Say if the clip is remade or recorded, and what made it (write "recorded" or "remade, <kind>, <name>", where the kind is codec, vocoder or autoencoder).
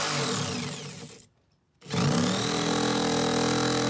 recorded